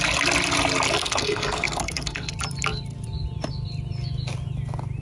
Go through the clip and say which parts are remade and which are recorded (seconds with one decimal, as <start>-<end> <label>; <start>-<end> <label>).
0.0-1.0 recorded; 1.0-2.3 remade; 2.3-5.0 recorded